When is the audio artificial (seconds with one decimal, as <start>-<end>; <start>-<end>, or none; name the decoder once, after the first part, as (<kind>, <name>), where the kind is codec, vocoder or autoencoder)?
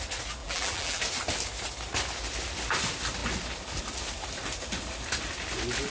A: 0.4-1.0 (vocoder, BigVGAN v2)